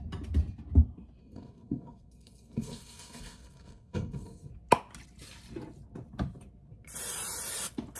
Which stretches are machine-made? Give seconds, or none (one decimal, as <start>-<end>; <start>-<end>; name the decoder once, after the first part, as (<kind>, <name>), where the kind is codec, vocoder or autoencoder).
1.2-4.5 (codec, SNAC)